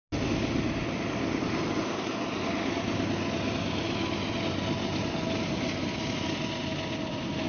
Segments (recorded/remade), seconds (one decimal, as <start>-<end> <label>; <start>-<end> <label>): 0.0-7.5 recorded